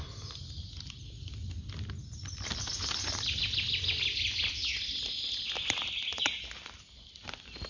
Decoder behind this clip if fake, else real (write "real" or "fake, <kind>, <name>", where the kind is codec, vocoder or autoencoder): real